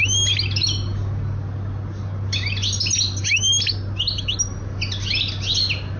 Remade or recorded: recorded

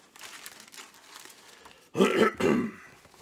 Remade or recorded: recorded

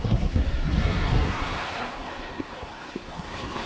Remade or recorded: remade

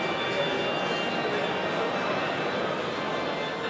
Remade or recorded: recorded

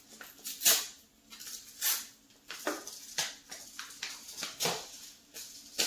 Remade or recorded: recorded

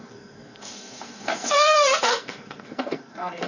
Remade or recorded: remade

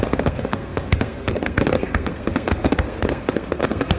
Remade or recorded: remade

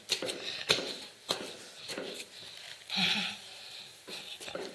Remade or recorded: recorded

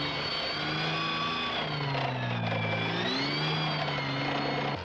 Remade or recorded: recorded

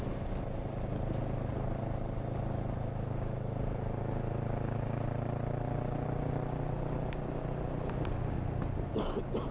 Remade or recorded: recorded